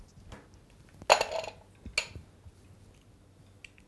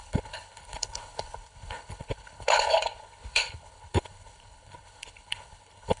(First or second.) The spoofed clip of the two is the second